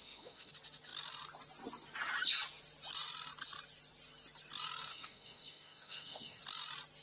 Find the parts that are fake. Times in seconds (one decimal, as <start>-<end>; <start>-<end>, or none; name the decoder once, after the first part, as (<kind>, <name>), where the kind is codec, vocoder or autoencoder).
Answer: 0.0-0.5 (autoencoder, DAC-VAE); 4.9-6.4

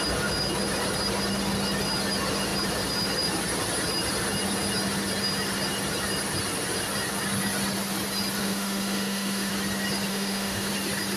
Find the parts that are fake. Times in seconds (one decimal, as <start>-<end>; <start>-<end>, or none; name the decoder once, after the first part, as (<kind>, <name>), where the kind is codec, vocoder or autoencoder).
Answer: 8.4-9.5 (autoencoder, DAC-VAE); 10.1-10.7

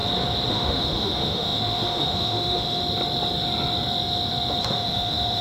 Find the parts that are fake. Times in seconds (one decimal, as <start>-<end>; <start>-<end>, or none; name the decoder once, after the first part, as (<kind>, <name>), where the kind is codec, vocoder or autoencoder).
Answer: 0.5-2.8 (autoencoder, DAC-VAE); 4.6-5.4

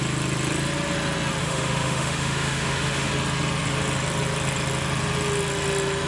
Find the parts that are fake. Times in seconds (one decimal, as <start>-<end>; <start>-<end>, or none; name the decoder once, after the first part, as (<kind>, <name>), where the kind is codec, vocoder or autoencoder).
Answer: 1.4-3.1 (autoencoder, DAC-VAE)

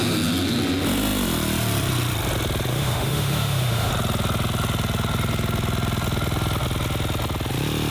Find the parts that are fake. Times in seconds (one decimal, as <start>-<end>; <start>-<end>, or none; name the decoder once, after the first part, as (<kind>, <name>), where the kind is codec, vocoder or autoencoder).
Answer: 2.7-3.9 (autoencoder, DAC-VAE)

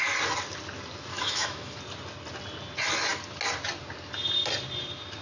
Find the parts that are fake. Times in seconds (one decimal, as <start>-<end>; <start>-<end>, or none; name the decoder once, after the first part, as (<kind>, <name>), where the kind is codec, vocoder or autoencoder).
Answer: 1.1-1.8 (autoencoder, DAC-VAE)

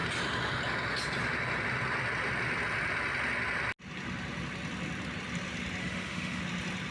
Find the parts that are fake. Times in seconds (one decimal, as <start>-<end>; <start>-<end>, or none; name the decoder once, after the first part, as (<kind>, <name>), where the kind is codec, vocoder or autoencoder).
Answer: 5.8-6.4 (autoencoder, DAC-VAE)